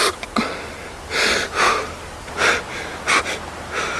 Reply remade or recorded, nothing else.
recorded